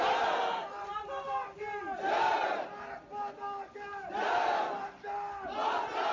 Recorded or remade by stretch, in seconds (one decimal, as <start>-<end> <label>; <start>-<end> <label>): 0.0-6.1 recorded